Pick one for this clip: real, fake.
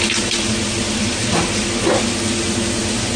real